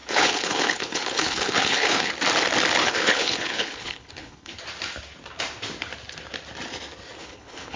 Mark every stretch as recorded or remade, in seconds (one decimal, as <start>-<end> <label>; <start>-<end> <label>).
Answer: 0.0-2.1 remade; 2.1-2.8 recorded; 2.8-4.6 remade; 4.6-7.2 recorded; 7.2-7.8 remade